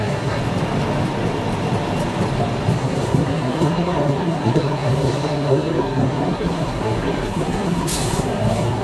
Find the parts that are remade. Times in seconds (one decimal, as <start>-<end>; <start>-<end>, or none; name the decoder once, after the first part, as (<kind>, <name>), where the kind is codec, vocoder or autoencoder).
0.0-0.4 (codec, SNAC); 2.7-8.8